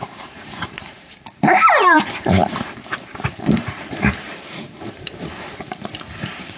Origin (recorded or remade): remade